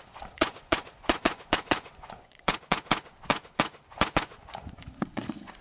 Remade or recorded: remade